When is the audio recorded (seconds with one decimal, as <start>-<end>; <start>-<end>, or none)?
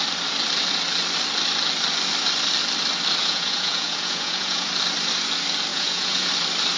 0.0-3.2; 4.7-5.7; 6.3-6.8